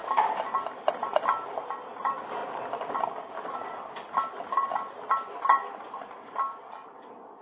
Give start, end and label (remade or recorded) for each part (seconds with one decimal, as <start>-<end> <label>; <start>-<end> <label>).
0.0-7.4 recorded